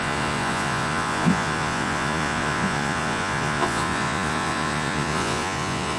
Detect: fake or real fake